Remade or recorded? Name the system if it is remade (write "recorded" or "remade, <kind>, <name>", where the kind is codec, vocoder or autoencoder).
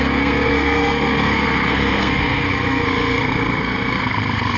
remade, codec, SNAC